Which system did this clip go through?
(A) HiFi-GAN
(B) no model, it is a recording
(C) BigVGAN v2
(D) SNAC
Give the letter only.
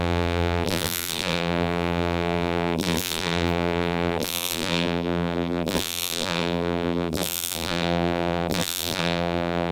C